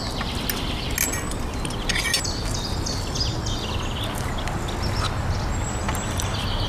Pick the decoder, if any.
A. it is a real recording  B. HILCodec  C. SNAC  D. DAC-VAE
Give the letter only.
A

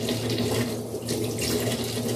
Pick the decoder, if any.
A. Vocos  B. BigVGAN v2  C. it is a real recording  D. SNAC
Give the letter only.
C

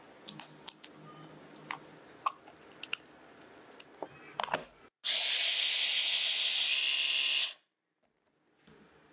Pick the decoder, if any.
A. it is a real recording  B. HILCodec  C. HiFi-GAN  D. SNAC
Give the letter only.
A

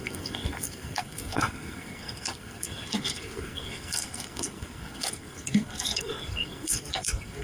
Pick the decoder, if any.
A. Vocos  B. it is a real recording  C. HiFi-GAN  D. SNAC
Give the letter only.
D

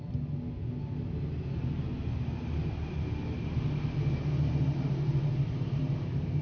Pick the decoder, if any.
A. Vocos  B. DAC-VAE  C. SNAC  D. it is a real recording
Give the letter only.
D